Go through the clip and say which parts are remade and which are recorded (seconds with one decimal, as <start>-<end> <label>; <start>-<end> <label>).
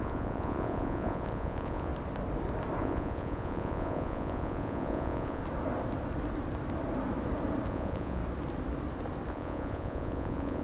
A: 0.0-1.9 remade; 1.9-2.8 recorded; 2.8-5.4 remade; 5.4-7.7 recorded; 7.7-8.2 remade; 8.2-9.3 recorded; 9.3-10.6 remade